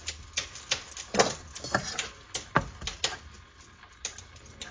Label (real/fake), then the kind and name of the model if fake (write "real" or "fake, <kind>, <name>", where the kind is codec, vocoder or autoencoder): real